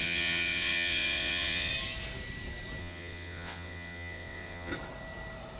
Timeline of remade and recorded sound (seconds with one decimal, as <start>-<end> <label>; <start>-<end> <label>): 0.0-1.7 remade; 1.7-2.8 recorded; 2.8-4.7 remade; 4.7-5.6 recorded

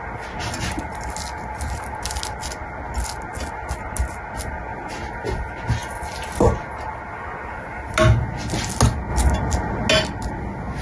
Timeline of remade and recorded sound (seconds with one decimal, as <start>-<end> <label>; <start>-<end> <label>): 0.0-10.8 recorded